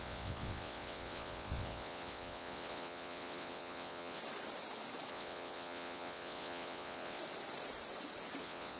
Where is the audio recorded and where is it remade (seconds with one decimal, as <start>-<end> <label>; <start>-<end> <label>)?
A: 0.0-4.2 remade; 4.2-5.1 recorded; 5.1-7.2 remade; 7.2-8.4 recorded; 8.4-8.8 remade